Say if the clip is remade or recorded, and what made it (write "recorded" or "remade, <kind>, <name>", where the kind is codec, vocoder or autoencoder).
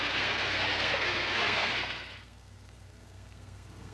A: remade, codec, SNAC